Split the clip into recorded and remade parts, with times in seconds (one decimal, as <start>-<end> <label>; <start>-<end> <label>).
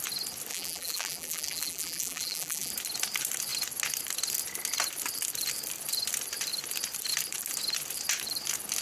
0.0-0.5 recorded; 0.5-2.7 remade; 2.7-8.8 recorded